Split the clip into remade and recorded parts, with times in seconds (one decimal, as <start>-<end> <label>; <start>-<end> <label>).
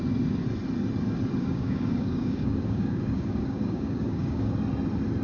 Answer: 0.0-1.4 recorded; 1.4-4.5 remade; 4.5-5.2 recorded